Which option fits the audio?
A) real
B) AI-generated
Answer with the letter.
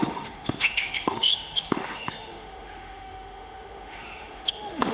B